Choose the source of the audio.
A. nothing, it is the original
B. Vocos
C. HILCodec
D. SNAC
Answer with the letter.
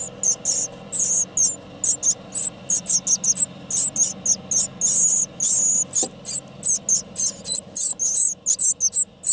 A